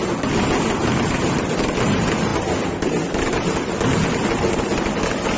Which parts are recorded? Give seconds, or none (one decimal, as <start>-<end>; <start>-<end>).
0.0-5.4